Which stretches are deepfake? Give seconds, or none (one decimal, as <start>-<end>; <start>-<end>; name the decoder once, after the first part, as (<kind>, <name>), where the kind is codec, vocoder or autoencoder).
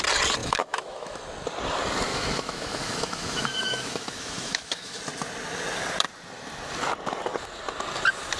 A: 0.4-1.2 (autoencoder, DAC-VAE); 2.1-5.0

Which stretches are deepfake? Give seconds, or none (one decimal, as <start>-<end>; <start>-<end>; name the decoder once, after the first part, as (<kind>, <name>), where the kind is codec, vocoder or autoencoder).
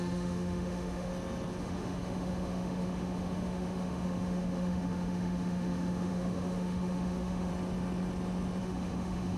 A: 0.0-1.1 (autoencoder, DAC-VAE); 1.6-7.5; 8.6-9.4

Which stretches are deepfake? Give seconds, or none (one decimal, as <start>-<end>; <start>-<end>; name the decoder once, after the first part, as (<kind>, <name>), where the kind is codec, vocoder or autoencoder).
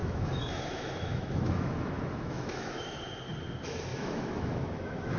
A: 0.0-3.0 (autoencoder, DAC-VAE); 3.9-5.2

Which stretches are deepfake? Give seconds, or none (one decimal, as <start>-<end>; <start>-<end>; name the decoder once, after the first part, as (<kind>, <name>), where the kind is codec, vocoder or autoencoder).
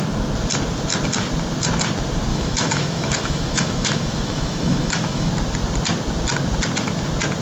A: 2.3-5.3 (autoencoder, DAC-VAE)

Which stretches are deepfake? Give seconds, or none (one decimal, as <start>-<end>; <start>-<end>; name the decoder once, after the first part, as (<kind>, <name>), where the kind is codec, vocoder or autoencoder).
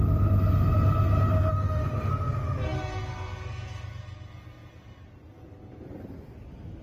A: 1.5-2.1 (autoencoder, DAC-VAE)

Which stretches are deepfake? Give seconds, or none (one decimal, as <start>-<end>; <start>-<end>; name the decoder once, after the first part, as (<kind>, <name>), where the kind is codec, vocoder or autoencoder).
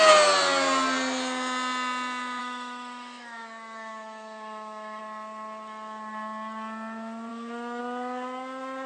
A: 2.4-5.0 (autoencoder, DAC-VAE); 7.3-7.8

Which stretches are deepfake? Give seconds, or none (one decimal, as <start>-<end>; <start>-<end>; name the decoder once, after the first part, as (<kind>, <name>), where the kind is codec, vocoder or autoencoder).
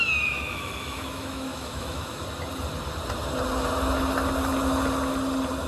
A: 0.0-2.2 (autoencoder, DAC-VAE)